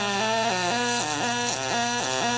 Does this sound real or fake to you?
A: real